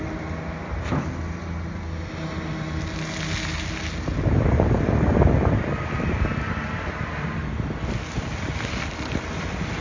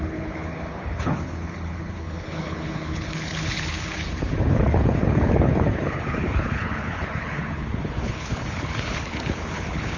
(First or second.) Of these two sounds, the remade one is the second